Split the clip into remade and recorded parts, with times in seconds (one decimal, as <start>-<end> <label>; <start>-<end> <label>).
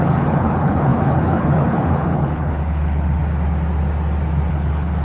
0.0-3.2 remade; 3.2-4.5 recorded; 4.5-5.0 remade